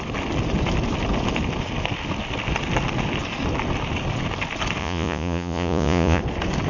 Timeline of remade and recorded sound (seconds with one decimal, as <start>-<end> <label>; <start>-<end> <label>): 0.0-4.8 recorded; 4.8-6.2 remade; 6.2-6.7 recorded